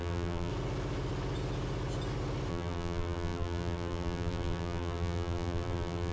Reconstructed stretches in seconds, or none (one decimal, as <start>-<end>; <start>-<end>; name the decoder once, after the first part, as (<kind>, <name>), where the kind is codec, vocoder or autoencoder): 0.0-0.5 (vocoder, BigVGAN v2); 2.5-6.1